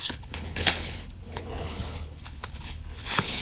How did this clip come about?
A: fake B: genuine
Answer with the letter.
A